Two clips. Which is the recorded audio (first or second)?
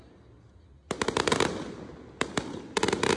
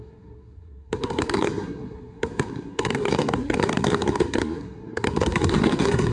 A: first